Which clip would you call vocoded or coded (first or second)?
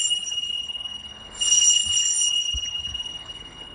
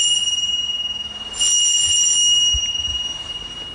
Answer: first